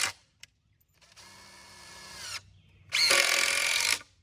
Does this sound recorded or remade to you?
recorded